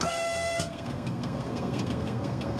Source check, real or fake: fake